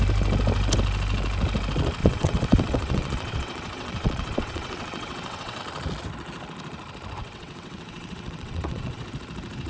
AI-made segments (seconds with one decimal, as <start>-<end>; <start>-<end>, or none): 2.0-5.6; 7.2-9.0